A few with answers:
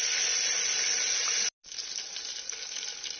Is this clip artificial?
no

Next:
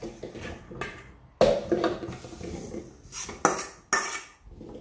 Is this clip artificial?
no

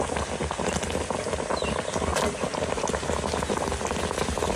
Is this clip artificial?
no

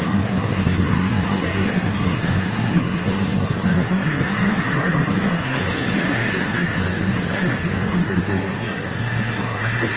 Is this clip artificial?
yes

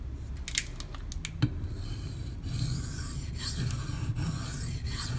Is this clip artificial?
no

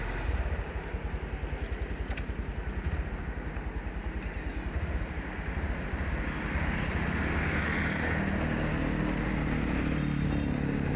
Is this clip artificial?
no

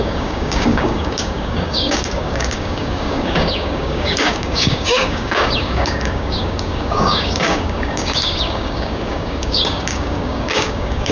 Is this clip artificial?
yes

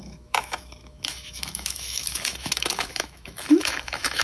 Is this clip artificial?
yes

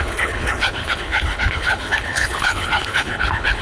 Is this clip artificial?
yes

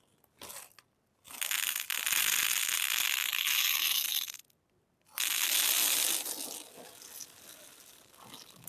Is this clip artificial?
no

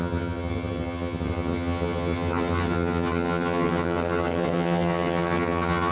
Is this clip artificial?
yes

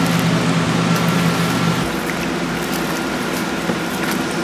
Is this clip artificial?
no